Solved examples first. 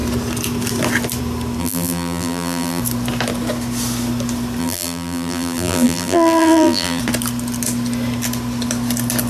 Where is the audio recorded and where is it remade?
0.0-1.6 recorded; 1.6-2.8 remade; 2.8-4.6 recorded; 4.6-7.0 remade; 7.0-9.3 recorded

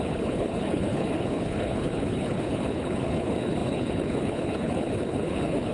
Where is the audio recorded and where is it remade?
0.0-5.7 remade

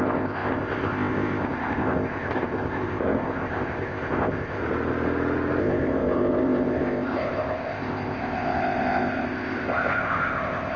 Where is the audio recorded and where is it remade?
0.0-4.6 remade; 4.6-5.6 recorded; 5.6-10.8 remade

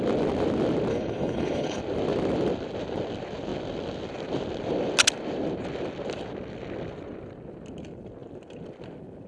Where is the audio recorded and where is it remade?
0.0-0.9 recorded; 0.9-1.8 remade; 1.8-9.3 recorded

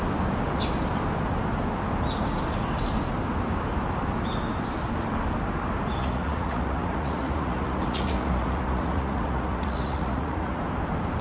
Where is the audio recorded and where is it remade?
0.0-6.0 recorded; 6.0-10.6 remade; 10.6-11.2 recorded

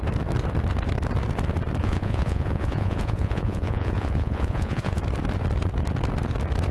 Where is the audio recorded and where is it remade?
0.0-1.8 recorded; 1.8-5.0 remade; 5.0-6.7 recorded

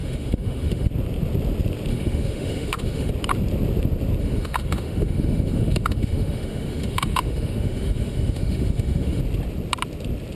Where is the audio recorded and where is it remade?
0.0-0.9 remade; 0.9-1.9 recorded; 1.9-3.1 remade; 3.1-4.2 recorded; 4.2-9.2 remade; 9.2-10.4 recorded

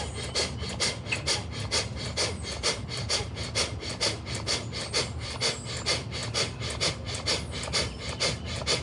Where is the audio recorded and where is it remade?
0.0-8.8 recorded